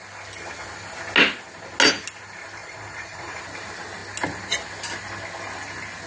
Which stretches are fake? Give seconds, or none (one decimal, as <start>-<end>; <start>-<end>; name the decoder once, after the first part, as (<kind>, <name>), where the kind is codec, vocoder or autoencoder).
2.6-3.4 (vocoder, Vocos)